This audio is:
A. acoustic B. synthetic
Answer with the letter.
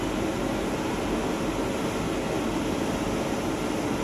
A